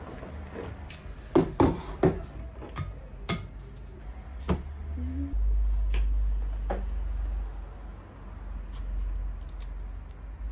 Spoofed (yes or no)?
no